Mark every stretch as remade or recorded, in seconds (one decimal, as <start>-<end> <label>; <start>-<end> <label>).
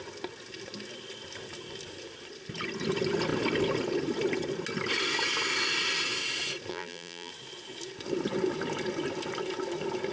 0.0-6.7 recorded; 6.7-7.3 remade; 7.3-10.1 recorded